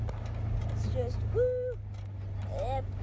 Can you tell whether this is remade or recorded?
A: recorded